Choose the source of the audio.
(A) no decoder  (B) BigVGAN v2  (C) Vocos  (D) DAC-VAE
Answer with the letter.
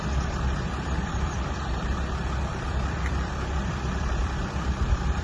B